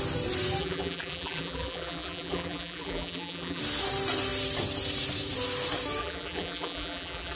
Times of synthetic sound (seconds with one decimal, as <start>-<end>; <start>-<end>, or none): 0.6-3.6; 6.0-7.4